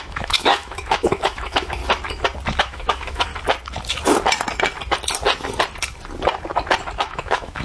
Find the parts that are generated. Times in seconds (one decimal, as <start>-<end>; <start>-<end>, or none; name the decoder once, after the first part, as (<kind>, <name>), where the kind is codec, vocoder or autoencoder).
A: 0.0-1.8 (autoencoder, DAC-VAE); 2.6-3.3; 7.0-7.6